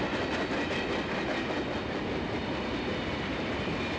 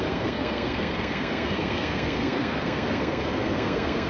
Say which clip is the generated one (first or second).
second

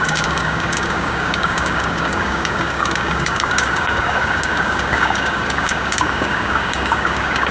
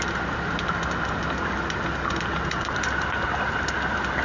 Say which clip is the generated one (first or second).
first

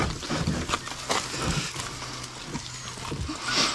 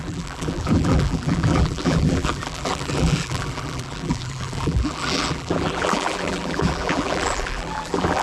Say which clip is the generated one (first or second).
second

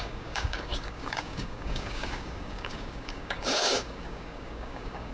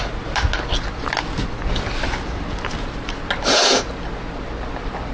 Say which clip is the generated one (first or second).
first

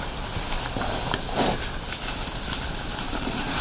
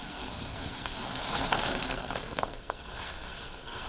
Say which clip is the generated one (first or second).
second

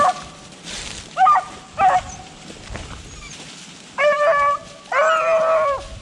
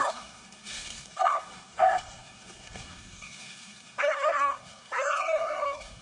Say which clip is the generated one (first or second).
second